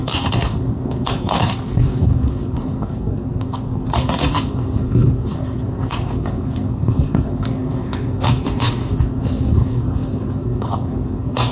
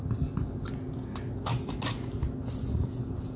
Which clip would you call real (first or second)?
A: second